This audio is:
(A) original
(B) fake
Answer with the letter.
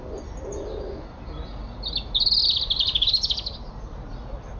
A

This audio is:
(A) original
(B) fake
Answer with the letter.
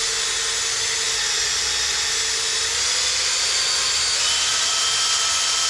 A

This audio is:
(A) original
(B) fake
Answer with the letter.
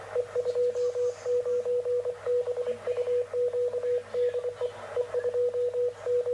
A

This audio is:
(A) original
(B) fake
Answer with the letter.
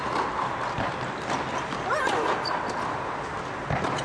A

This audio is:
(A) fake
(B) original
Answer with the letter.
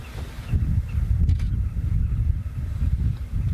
B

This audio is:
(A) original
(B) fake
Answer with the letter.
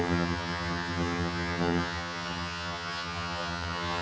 B